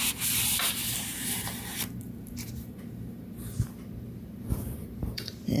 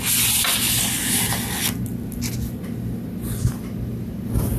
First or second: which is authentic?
second